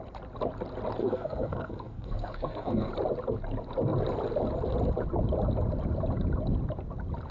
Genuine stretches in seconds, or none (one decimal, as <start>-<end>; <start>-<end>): 0.0-1.0; 2.9-7.3

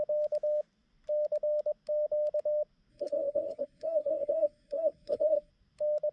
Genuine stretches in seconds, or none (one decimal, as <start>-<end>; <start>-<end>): 0.0-2.9; 5.5-6.1

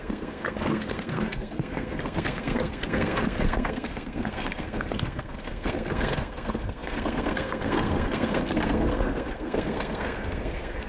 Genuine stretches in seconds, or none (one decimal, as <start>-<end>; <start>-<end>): none

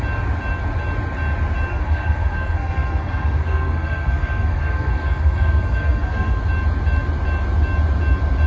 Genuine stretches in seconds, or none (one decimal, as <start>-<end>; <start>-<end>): 0.0-1.7; 6.4-8.5

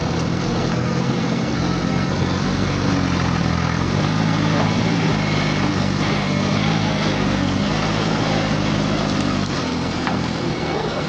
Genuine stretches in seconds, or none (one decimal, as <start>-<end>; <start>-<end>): 2.9-3.4; 5.1-5.7; 8.6-9.2

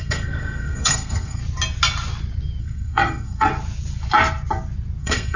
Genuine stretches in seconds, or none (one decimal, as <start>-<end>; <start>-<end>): 1.4-2.6; 3.5-5.0

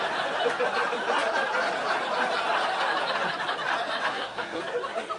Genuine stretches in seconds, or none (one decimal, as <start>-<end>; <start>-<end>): 0.0-4.1; 4.6-5.2